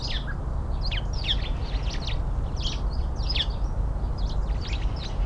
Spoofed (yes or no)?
no